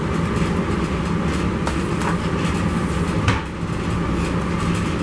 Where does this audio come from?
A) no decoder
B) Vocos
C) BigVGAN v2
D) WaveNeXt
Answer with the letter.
A